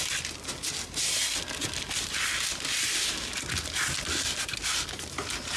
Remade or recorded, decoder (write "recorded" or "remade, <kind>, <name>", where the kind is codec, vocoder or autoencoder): recorded